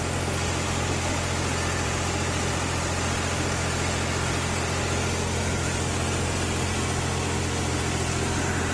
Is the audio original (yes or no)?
yes